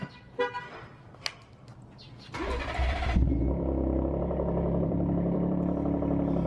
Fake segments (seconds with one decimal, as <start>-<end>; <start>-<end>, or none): 0.0-0.9; 4.2-6.5